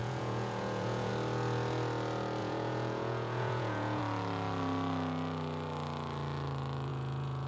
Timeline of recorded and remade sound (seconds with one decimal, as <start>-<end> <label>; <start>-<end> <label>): 0.0-1.1 remade; 1.1-2.4 recorded; 2.4-4.0 remade; 4.0-6.9 recorded; 6.9-7.5 remade